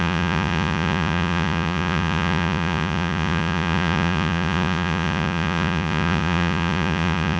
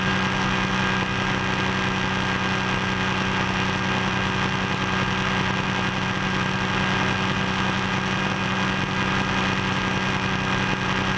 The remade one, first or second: first